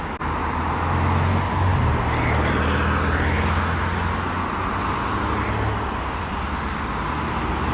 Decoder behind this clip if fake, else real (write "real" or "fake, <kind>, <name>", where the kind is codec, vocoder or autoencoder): real